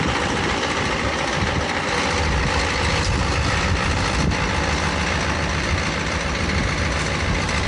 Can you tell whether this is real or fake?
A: fake